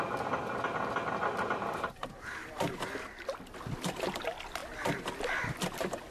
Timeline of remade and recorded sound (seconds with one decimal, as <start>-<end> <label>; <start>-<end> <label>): 0.0-1.2 recorded; 1.2-2.8 remade; 2.8-6.1 recorded